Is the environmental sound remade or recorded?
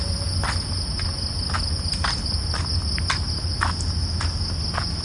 recorded